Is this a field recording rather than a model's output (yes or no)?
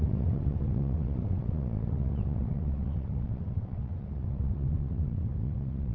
no